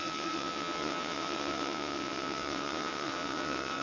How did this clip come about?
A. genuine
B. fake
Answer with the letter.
B